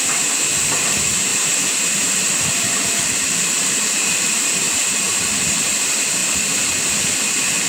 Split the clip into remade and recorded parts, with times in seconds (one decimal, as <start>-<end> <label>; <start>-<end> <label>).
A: 0.0-1.3 recorded; 1.3-5.0 remade; 5.0-7.7 recorded

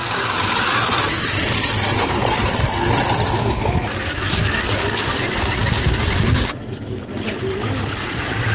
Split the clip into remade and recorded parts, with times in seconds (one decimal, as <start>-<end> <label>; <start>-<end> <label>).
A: 0.0-2.2 recorded; 2.2-3.8 remade; 3.8-5.0 recorded; 5.0-5.6 remade; 5.6-7.7 recorded; 7.7-8.5 remade

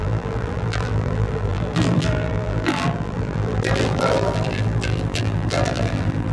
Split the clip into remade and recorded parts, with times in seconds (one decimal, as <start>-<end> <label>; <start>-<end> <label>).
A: 0.0-6.3 remade